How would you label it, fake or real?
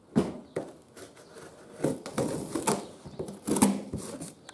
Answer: real